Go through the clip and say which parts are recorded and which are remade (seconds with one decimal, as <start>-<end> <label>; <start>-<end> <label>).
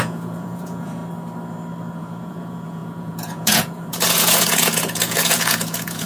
0.0-1.0 remade; 1.0-2.0 recorded; 2.0-6.0 remade